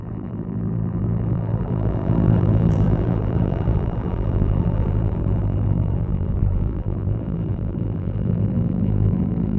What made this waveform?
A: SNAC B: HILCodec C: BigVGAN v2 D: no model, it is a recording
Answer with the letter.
C